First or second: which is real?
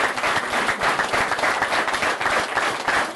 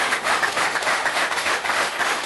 first